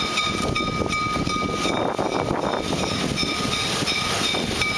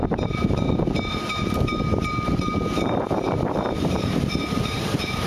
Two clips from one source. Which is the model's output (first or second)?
second